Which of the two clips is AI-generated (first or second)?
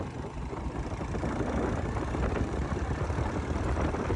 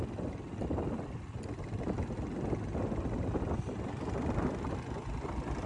first